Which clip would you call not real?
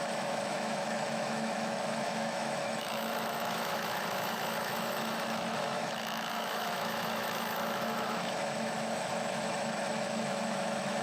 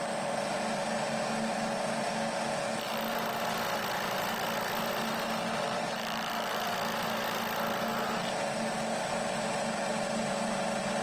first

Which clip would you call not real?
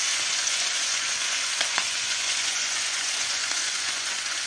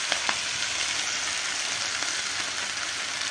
first